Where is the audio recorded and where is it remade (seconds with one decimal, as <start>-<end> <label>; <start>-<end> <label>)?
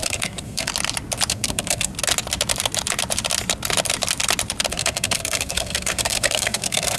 0.0-0.7 remade; 0.7-1.3 recorded; 1.3-1.9 remade; 1.9-4.7 recorded; 4.7-7.0 remade